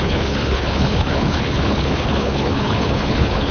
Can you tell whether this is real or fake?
fake